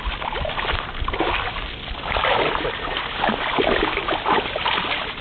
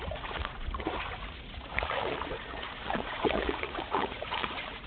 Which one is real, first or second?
first